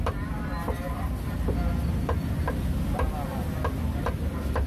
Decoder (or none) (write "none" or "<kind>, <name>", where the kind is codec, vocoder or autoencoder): none